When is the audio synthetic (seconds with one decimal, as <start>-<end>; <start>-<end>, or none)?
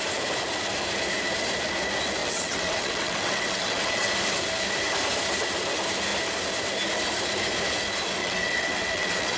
2.2-4.1; 8.2-9.4